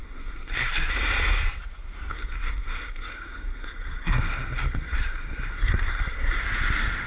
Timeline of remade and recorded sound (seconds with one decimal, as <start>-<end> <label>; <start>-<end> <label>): 0.0-0.9 remade; 0.9-2.1 recorded; 2.1-6.4 remade; 6.4-7.1 recorded